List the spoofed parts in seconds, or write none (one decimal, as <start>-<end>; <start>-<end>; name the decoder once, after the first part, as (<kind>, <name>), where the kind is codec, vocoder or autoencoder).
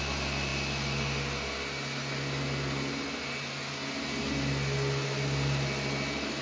none